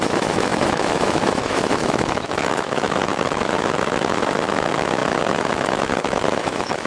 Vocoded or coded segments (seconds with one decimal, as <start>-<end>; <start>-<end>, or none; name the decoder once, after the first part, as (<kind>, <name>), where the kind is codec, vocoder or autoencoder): 0.0-6.9 (autoencoder, DAC-VAE)